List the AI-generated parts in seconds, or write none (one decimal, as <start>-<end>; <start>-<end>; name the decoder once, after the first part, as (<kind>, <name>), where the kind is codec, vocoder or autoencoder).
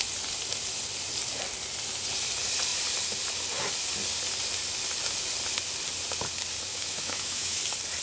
6.7-7.6 (autoencoder, DAC-VAE)